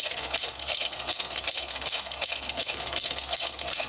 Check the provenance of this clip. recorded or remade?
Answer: remade